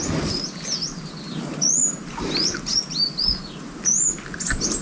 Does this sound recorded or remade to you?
recorded